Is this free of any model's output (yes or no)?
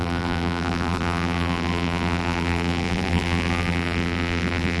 no